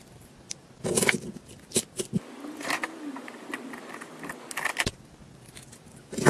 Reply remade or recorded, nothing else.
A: recorded